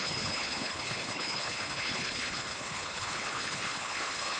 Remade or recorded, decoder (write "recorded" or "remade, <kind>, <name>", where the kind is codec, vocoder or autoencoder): remade, codec, HILCodec